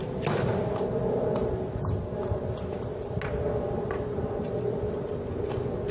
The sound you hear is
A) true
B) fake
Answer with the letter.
A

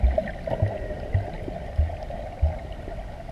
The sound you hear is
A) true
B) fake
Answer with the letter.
A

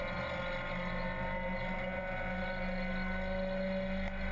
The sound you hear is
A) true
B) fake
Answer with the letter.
A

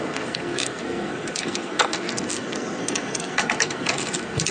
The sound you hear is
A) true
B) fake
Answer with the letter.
B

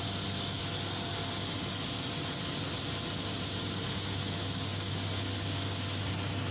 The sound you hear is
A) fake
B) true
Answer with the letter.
B